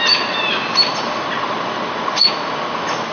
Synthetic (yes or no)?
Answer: no